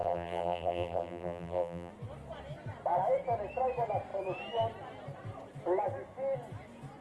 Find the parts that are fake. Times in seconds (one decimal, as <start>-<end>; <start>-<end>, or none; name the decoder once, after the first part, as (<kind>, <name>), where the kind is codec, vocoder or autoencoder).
0.0-1.9 (vocoder, BigVGAN v2)